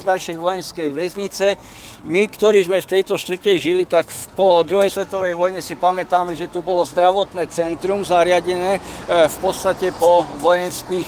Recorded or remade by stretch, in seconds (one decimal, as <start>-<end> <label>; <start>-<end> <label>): 0.0-7.8 remade; 7.8-10.0 recorded; 10.0-11.1 remade